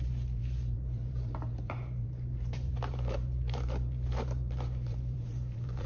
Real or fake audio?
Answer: fake